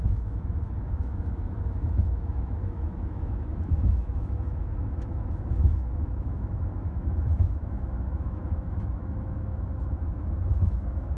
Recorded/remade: remade